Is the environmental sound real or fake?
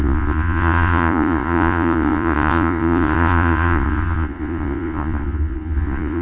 fake